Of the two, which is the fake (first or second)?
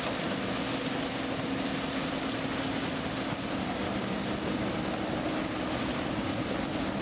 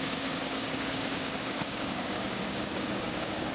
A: second